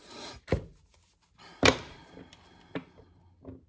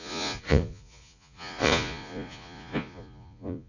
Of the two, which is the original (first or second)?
first